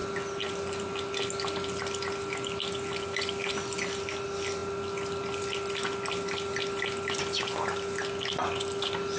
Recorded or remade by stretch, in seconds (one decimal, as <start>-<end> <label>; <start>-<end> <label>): 0.0-9.2 recorded